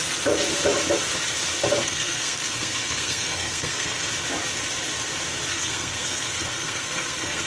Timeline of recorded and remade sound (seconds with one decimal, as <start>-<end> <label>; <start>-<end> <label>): 0.0-1.8 recorded; 1.8-4.1 remade; 4.1-5.5 recorded; 5.5-7.5 remade